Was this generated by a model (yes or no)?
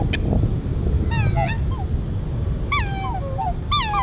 no